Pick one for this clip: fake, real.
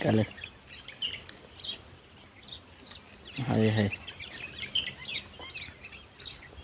fake